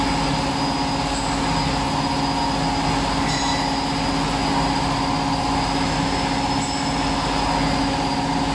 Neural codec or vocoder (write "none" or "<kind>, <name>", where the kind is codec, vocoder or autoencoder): none